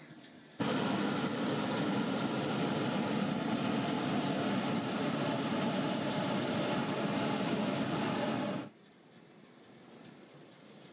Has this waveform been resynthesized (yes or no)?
no